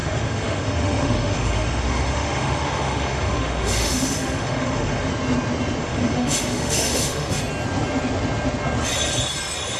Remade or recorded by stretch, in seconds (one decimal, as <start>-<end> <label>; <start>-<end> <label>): 0.0-5.1 remade; 5.1-5.8 recorded; 5.8-7.4 remade; 7.4-9.8 recorded